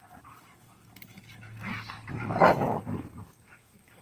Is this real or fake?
fake